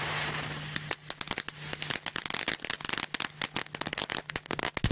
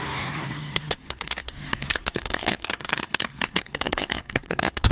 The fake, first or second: second